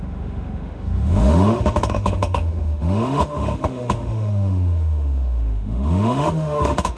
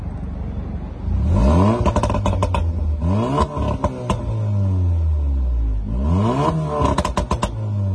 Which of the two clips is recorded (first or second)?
second